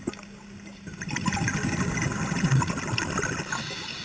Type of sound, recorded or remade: recorded